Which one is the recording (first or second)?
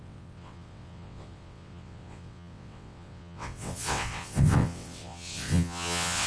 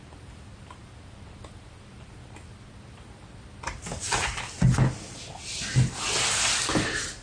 second